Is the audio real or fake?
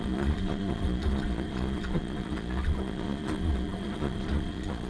fake